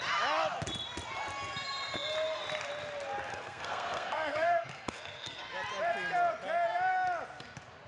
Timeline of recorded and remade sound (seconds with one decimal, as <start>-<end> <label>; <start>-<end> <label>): 0.0-3.3 recorded; 3.3-5.4 remade; 5.4-7.9 recorded